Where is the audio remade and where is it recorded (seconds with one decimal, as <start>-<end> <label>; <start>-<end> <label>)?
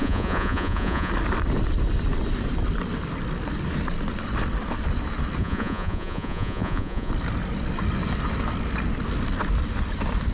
0.0-1.1 remade; 1.1-5.4 recorded; 5.4-7.1 remade; 7.1-10.3 recorded